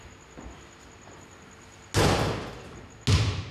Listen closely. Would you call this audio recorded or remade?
recorded